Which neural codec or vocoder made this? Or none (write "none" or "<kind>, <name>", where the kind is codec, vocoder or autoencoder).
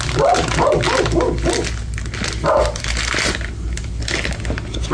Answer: none